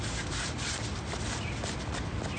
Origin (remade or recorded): recorded